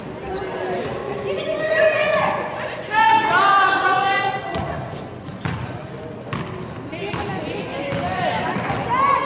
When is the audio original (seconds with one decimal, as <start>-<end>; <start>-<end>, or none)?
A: 0.0-1.0; 5.9-9.3